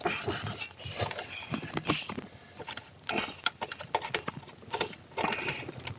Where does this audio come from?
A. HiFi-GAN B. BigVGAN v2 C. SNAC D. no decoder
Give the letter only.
D